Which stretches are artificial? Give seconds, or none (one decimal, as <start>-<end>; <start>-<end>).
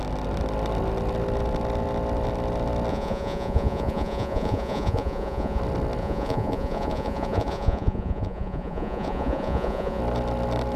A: 2.9-5.6; 6.0-10.0